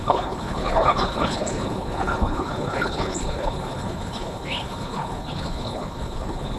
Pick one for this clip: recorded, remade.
remade